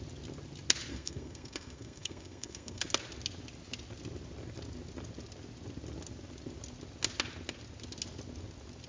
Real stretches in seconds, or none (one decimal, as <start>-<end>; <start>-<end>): 0.0-0.9; 2.8-8.9